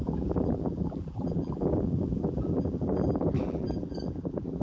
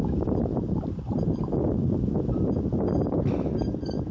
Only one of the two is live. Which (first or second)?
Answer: second